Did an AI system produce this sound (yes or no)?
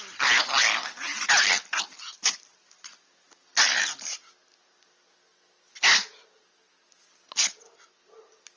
no